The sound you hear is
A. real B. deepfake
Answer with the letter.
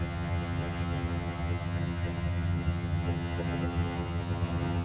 B